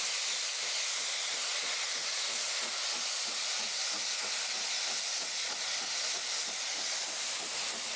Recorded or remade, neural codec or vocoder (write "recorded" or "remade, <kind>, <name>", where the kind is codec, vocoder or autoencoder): recorded